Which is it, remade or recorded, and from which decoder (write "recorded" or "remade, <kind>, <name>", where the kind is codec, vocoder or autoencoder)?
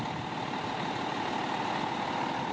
recorded